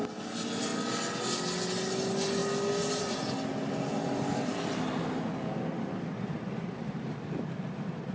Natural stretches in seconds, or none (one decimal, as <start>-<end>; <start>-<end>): 0.0-8.1